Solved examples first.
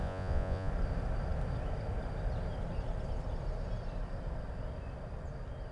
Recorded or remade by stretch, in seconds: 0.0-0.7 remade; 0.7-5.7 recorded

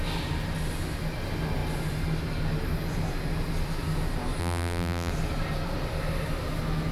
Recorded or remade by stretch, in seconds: 0.0-4.4 recorded; 4.4-5.1 remade; 5.1-6.9 recorded

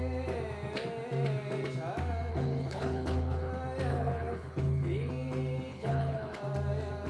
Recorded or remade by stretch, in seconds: 0.0-2.3 recorded; 2.3-3.5 remade; 3.5-3.9 recorded; 3.9-5.1 remade; 5.1-5.7 recorded; 5.7-6.4 remade; 6.4-7.1 recorded

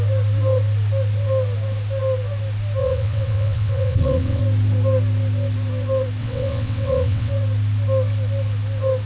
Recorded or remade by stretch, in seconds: 0.0-2.8 recorded; 2.8-4.4 remade; 4.4-6.2 recorded; 6.2-7.3 remade; 7.3-9.1 recorded

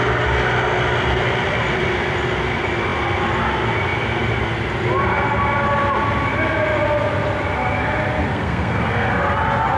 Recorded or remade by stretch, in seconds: 0.0-8.3 recorded; 8.3-9.1 remade; 9.1-9.8 recorded

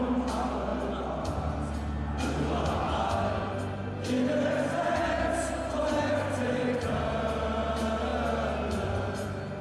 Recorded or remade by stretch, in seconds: 0.0-9.6 recorded

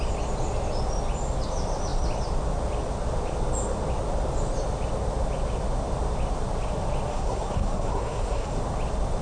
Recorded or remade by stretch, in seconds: 0.0-7.1 recorded; 7.1-8.6 remade; 8.6-9.2 recorded